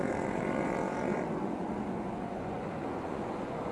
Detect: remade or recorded remade